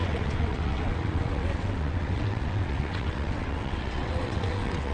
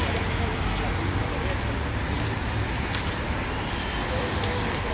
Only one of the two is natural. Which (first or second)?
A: second